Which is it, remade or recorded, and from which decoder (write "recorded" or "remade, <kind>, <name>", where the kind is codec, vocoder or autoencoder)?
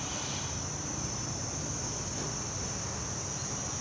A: recorded